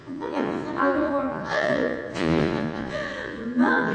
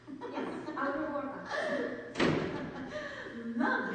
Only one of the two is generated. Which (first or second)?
first